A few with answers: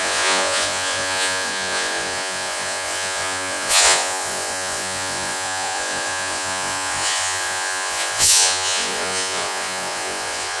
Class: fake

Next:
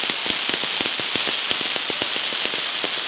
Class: real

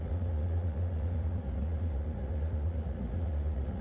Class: fake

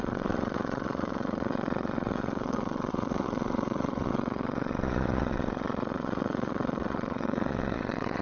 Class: fake